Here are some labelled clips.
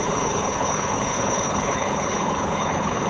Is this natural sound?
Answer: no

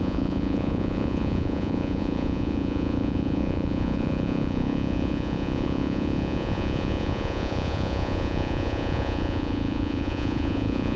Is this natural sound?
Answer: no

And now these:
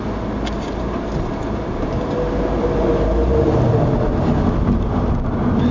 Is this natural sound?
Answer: yes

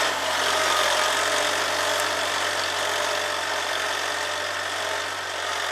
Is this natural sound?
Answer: yes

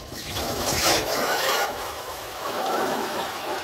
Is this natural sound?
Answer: no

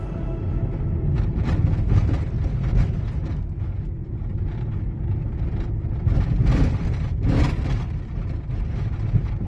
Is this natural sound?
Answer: yes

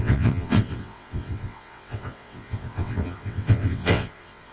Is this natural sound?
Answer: no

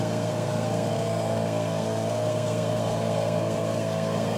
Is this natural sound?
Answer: no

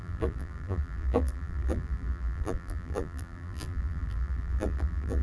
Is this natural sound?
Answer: no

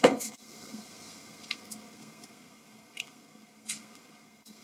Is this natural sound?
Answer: no